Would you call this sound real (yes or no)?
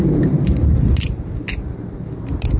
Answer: no